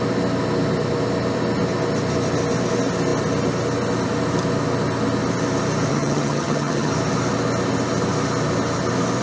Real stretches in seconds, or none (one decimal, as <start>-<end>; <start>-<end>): 0.0-5.9; 6.9-9.2